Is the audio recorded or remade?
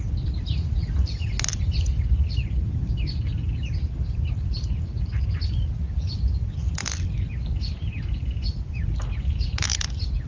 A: recorded